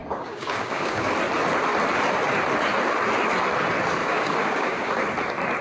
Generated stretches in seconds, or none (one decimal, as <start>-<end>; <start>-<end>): 0.0-1.1; 4.0-4.9